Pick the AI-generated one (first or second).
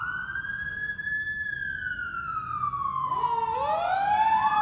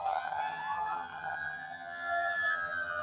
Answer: second